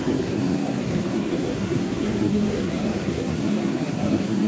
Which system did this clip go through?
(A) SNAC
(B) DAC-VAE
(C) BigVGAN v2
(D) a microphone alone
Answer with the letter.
A